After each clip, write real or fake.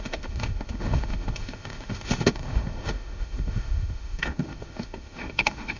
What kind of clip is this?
fake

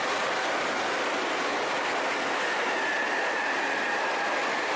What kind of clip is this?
real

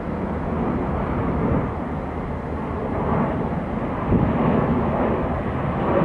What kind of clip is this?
real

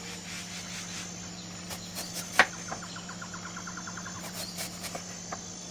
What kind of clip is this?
real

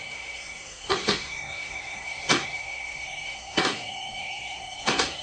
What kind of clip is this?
fake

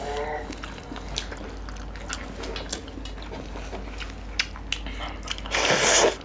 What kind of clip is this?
real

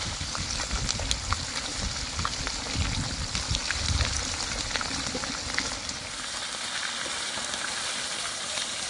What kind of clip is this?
fake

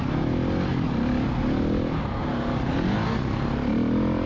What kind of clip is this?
real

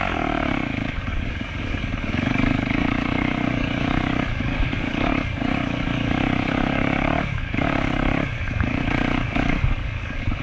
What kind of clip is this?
fake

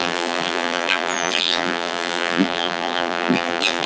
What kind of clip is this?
fake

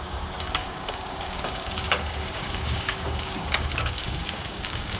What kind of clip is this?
fake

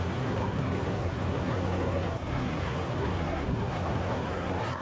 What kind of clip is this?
fake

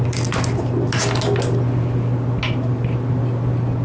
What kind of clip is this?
real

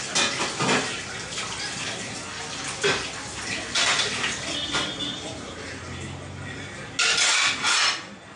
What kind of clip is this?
real